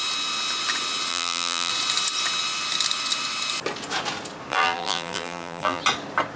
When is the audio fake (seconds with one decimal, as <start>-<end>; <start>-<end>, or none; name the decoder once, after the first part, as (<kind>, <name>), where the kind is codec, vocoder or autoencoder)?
1.1-1.7 (vocoder, BigVGAN v2); 4.5-5.8